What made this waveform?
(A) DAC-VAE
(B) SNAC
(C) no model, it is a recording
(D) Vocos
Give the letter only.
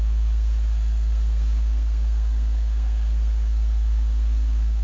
B